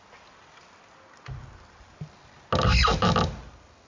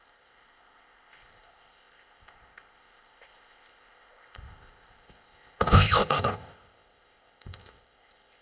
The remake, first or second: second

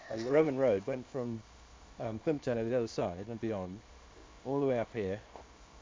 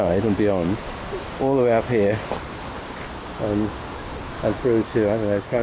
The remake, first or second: first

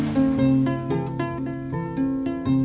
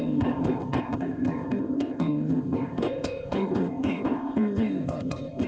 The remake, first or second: second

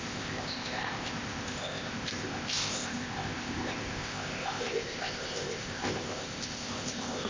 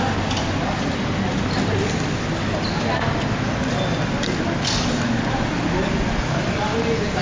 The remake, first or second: first